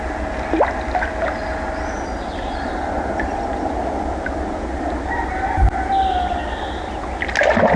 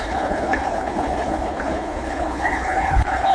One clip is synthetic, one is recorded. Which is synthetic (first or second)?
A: second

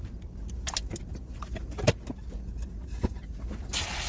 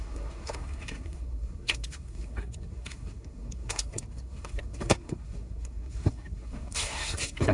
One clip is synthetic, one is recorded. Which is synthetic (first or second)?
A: second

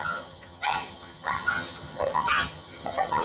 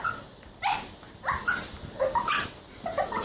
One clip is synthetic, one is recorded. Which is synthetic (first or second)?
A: first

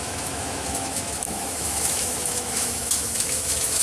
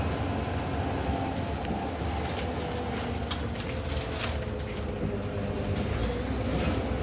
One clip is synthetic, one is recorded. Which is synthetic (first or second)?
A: first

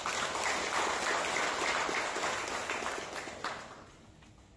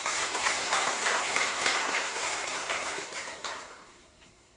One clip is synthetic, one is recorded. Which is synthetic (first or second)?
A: second